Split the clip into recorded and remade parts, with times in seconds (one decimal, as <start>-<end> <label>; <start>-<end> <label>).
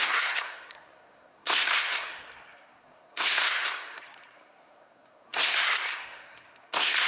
0.0-7.1 remade